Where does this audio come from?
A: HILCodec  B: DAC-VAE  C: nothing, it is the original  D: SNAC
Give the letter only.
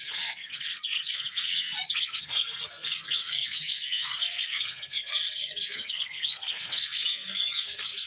D